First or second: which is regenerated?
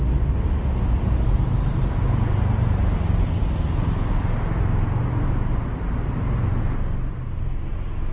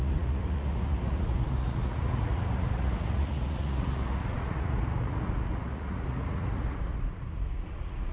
second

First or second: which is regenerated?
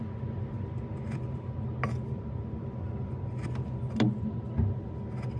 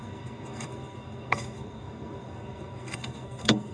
second